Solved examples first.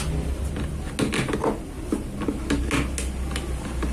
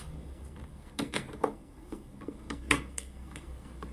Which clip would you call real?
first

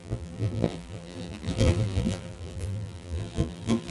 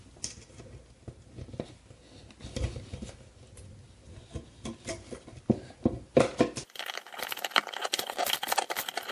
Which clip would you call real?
second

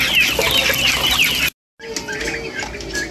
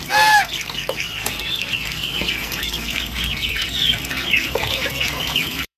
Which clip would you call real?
first